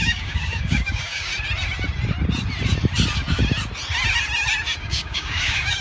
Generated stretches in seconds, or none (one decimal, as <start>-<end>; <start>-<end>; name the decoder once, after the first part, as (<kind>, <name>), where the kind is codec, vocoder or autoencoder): 0.0-1.3 (codec, DAC); 4.8-5.8